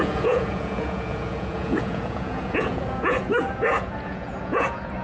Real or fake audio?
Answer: fake